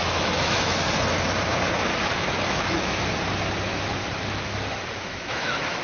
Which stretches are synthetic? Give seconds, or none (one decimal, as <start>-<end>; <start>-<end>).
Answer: 0.0-0.9; 1.9-3.1; 3.7-5.8